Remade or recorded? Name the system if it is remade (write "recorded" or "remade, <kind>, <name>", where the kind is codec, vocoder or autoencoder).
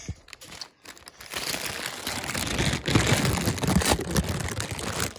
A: recorded